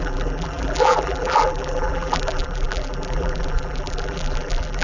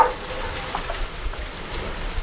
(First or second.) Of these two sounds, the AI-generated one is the first